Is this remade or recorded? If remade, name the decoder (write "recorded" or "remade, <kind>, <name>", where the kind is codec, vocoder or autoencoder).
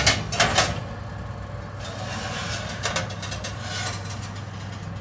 recorded